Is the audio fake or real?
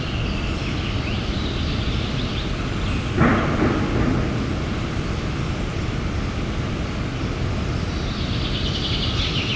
real